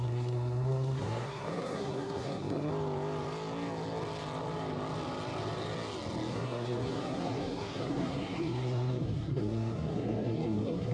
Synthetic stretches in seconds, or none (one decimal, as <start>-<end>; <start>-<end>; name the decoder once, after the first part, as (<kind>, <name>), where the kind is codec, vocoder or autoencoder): 0.0-2.7 (codec, SNAC); 6.3-10.9